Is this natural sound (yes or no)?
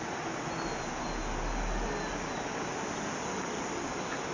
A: yes